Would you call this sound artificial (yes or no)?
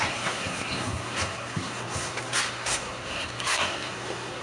yes